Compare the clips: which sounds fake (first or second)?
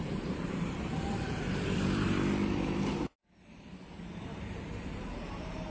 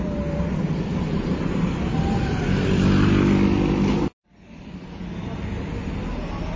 first